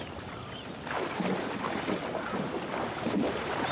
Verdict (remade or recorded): recorded